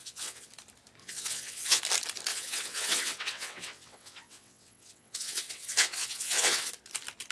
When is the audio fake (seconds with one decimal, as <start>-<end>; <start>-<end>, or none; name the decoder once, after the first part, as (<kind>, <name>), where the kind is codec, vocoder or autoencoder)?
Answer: 0.0-0.5 (vocoder, WaveNeXt); 1.0-1.8; 2.3-6.7